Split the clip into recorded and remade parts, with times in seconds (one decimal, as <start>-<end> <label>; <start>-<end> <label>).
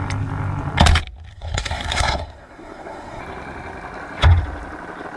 0.0-1.3 recorded; 1.3-3.2 remade; 3.2-5.2 recorded